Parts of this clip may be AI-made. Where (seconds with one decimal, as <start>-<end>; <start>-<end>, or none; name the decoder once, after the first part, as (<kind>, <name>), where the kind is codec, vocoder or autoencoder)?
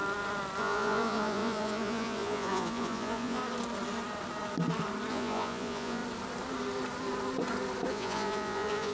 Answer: 0.6-3.4 (vocoder, Vocos); 5.1-6.0; 7.9-8.9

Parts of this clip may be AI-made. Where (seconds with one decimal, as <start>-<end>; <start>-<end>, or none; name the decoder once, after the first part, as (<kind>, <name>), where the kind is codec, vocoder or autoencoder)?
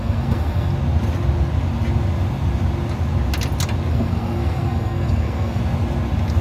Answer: 0.0-0.7 (codec, SNAC); 3.9-5.6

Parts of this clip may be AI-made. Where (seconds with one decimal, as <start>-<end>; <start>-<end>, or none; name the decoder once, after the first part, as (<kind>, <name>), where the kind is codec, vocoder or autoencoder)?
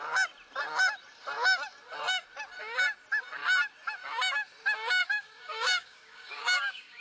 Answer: 5.0-7.0 (codec, DAC)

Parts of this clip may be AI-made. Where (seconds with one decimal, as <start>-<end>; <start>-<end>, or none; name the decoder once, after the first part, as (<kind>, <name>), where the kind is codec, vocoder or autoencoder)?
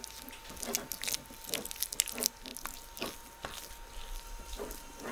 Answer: none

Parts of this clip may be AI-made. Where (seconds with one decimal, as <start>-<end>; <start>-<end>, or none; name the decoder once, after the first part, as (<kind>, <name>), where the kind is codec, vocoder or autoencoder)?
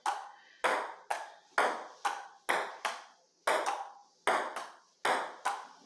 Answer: none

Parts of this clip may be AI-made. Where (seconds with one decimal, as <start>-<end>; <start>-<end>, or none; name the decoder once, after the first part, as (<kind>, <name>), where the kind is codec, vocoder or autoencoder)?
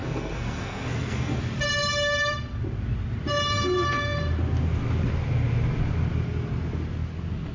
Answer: 0.0-1.4 (codec, SNAC)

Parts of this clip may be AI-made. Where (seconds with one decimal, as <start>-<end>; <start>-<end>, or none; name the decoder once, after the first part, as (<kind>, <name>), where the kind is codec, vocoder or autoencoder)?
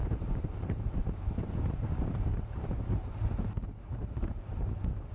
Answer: 0.0-3.1 (vocoder, BigVGAN v2); 3.8-4.5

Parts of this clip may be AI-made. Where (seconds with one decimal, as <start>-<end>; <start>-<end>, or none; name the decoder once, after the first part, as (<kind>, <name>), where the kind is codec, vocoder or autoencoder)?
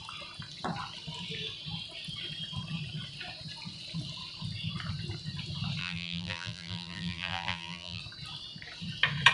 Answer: 5.8-8.0 (vocoder, BigVGAN v2)